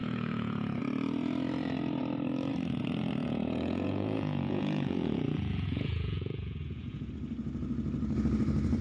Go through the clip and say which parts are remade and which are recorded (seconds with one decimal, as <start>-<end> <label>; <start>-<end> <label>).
0.0-0.8 remade; 0.8-3.2 recorded; 3.2-7.1 remade; 7.1-8.8 recorded